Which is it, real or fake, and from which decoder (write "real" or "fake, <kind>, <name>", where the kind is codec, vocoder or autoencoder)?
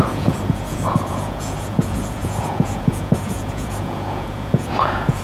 fake, vocoder, Vocos